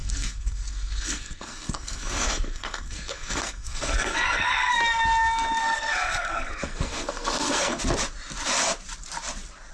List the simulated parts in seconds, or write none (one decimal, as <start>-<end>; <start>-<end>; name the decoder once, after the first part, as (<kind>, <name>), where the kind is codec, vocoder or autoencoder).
0.0-4.7 (codec, SNAC); 5.6-7.8

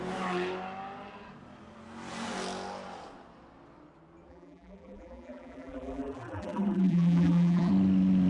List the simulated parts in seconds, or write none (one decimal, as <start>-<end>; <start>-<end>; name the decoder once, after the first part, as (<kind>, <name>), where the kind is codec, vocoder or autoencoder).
4.3-7.7 (vocoder, BigVGAN v2)

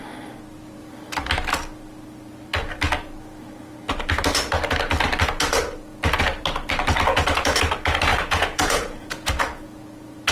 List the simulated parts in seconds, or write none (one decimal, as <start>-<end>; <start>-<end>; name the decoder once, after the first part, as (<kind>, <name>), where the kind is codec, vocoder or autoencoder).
8.1-9.3 (vocoder, Vocos)